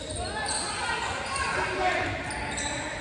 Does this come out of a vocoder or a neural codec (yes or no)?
no